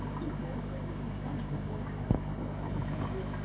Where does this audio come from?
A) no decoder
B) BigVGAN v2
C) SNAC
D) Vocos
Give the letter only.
A